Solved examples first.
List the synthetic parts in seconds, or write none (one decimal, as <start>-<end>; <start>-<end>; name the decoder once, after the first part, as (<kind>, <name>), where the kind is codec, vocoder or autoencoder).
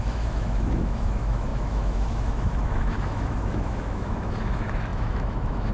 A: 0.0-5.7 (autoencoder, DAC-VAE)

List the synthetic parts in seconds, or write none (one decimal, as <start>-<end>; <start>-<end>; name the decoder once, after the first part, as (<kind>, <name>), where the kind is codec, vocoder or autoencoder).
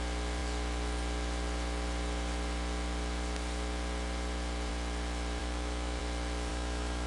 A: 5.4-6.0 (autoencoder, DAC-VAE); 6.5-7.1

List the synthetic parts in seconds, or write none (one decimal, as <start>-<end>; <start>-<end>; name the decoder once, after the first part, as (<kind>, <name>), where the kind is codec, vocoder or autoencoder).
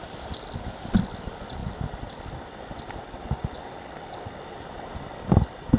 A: none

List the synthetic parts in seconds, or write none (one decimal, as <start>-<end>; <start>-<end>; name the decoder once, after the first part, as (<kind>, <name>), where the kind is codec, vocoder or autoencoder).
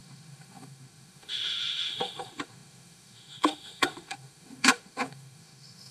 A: 0.0-5.9 (autoencoder, DAC-VAE)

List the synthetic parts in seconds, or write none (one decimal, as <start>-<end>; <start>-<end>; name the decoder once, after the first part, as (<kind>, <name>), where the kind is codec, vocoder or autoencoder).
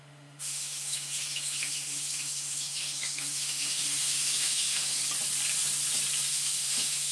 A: 0.0-5.0 (autoencoder, DAC-VAE); 6.3-7.1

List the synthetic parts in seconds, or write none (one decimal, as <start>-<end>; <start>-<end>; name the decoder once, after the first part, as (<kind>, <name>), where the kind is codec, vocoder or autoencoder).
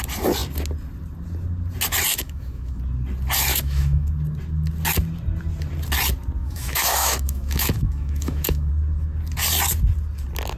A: 2.1-2.8 (autoencoder, DAC-VAE); 3.5-4.1; 6.4-8.7